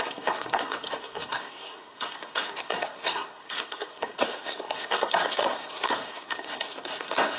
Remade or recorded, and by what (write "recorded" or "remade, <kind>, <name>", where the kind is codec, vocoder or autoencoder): remade, codec, SNAC